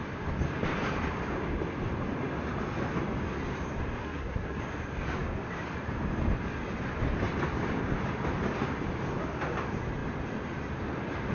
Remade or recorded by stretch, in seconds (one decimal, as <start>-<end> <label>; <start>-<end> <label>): 0.0-4.0 recorded; 4.0-4.6 remade; 4.6-11.3 recorded